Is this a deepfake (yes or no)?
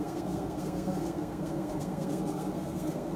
yes